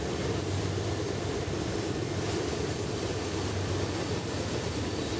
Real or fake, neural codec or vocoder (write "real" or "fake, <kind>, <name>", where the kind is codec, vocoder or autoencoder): fake, vocoder, BigVGAN v2